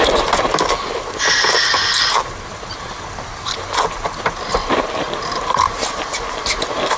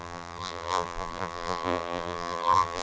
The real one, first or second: first